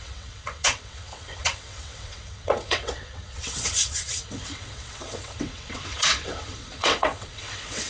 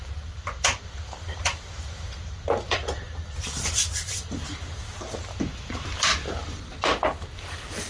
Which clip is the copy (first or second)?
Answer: first